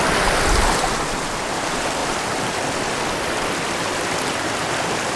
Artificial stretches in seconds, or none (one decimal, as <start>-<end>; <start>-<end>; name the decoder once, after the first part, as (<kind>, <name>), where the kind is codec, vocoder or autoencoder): none